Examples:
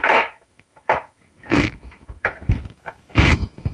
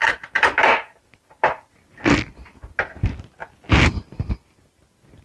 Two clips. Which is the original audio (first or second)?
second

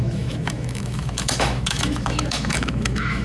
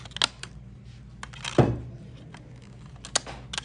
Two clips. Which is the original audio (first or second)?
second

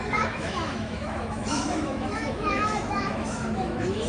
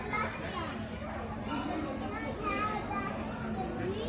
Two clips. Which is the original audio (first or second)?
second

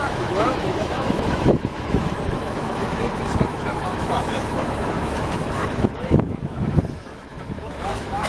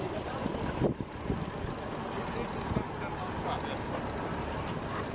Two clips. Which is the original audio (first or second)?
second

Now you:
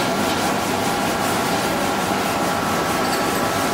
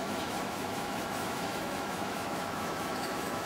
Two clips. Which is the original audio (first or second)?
first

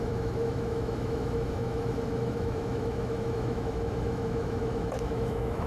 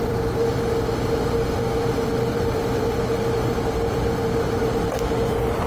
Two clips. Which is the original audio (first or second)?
second